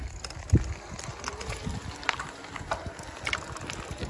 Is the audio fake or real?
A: real